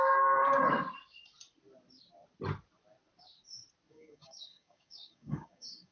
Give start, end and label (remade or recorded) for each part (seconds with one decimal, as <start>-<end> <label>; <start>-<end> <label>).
0.0-0.4 remade; 0.4-3.9 recorded; 3.9-5.9 remade